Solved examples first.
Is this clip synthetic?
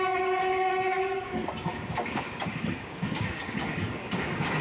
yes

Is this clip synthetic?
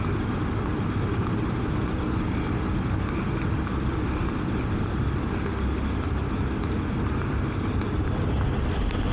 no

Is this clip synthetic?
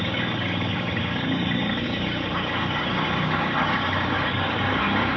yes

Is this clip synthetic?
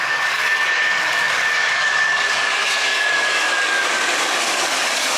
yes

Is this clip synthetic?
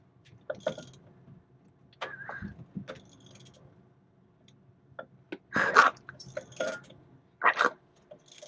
no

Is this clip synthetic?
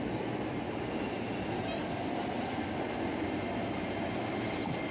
no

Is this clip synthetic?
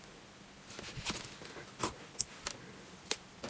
no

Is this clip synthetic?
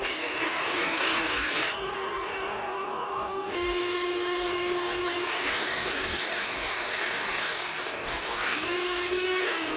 yes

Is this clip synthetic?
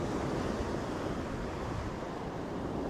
no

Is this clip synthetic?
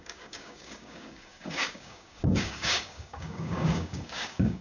yes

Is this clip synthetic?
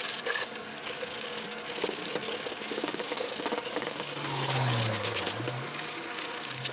yes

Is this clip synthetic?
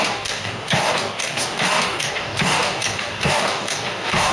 yes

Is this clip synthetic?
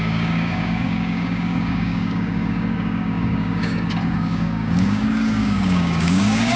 yes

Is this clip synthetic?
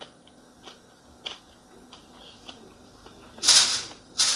no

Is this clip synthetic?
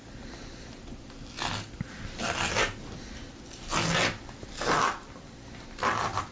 no